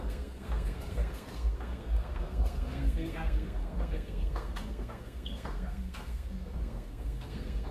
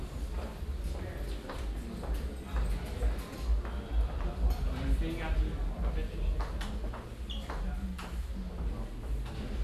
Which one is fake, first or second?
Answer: first